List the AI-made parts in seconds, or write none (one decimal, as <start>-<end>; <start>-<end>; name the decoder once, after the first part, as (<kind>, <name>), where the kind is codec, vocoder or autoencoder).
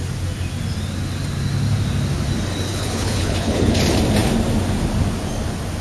2.7-3.8 (codec, HILCodec)